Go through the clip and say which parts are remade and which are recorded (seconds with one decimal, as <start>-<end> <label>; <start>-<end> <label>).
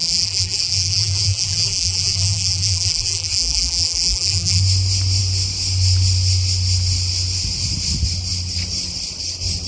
0.0-4.6 remade; 4.6-9.7 recorded